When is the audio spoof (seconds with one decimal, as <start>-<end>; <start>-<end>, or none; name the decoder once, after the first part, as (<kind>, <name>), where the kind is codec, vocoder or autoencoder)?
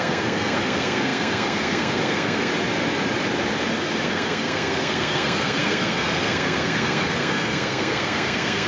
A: 0.0-2.5 (codec, SNAC); 4.0-8.7